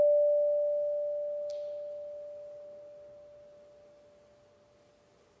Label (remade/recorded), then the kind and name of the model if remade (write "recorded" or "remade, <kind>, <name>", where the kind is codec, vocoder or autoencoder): recorded